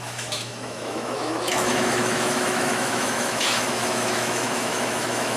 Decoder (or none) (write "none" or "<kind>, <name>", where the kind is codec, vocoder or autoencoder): autoencoder, DAC-VAE